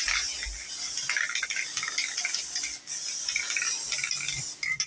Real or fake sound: real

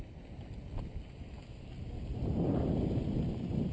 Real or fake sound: real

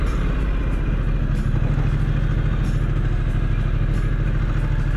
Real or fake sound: real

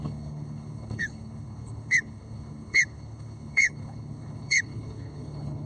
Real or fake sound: fake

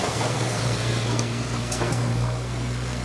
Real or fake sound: fake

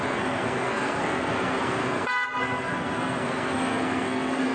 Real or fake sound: fake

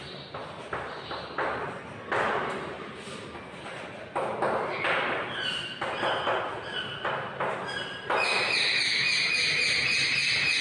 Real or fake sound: real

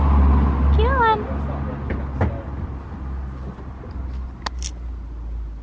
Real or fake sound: real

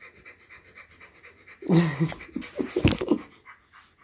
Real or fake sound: real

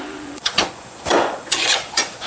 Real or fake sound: fake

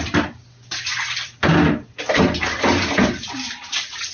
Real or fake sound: real